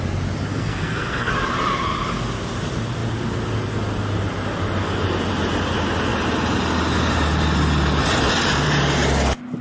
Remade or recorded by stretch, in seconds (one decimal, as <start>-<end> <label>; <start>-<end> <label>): 0.0-0.5 recorded; 0.5-1.3 remade; 1.3-9.6 recorded